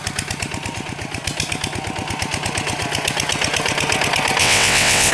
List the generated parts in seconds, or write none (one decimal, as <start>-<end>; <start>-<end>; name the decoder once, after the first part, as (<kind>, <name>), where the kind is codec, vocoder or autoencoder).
4.4-5.1 (vocoder, WaveNeXt)